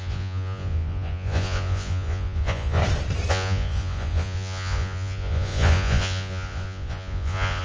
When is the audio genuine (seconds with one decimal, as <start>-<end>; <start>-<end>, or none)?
2.8-3.3